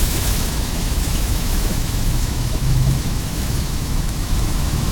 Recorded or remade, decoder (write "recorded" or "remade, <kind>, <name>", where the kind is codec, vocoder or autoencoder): remade, autoencoder, DAC-VAE